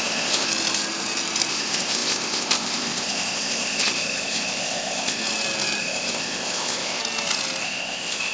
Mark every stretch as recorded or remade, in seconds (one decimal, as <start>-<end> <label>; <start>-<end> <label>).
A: 0.0-0.5 remade; 0.5-1.5 recorded; 1.5-5.2 remade; 5.2-5.8 recorded; 5.8-7.0 remade; 7.0-7.6 recorded; 7.6-8.3 remade